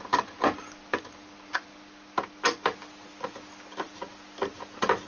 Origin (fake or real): real